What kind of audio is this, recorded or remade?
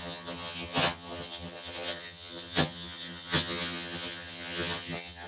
remade